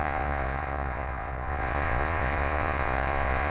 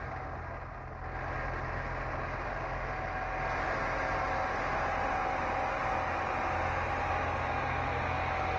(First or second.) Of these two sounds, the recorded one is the second